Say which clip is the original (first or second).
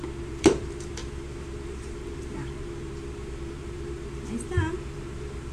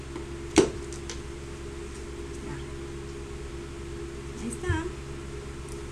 second